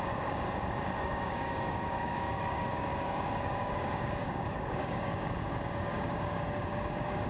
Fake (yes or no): yes